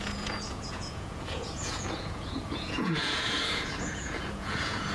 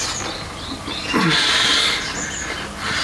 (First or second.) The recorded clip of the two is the second